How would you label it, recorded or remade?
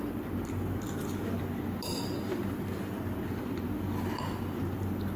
recorded